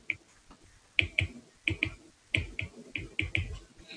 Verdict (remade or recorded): recorded